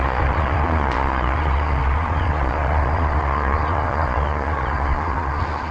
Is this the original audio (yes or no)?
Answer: no